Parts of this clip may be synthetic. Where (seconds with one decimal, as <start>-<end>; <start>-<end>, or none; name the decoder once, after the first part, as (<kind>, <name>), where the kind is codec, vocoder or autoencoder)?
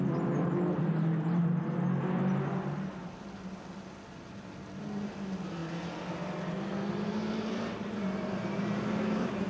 none